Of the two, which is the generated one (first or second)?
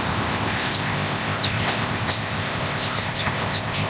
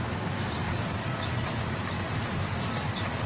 first